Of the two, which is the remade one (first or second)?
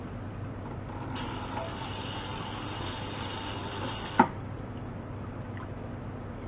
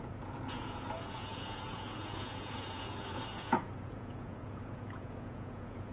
second